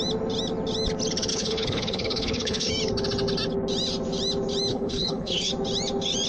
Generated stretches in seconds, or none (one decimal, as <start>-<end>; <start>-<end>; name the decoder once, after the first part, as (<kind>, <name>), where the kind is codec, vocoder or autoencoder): 1.3-2.7 (codec, HILCodec); 4.7-5.5